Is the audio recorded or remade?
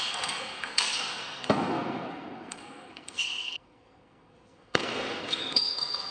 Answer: remade